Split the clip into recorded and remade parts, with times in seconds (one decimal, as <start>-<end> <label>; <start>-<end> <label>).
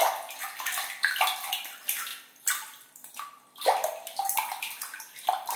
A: 0.0-5.6 recorded